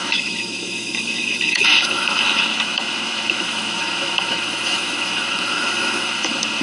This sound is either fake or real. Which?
fake